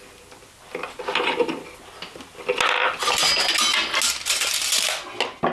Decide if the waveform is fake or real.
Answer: real